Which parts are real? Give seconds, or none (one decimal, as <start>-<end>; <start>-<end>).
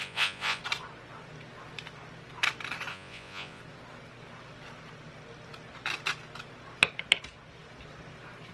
0.6-2.9; 3.6-8.5